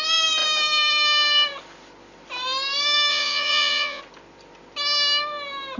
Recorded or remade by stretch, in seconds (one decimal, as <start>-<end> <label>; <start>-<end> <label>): 0.0-3.1 recorded; 3.1-4.0 remade; 4.0-5.8 recorded